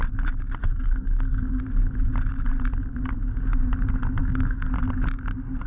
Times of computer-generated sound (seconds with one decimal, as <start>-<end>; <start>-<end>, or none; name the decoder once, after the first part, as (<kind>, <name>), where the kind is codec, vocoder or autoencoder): 0.6-1.6 (codec, SNAC); 4.2-4.7